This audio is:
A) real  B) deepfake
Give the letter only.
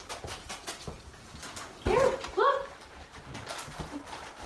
A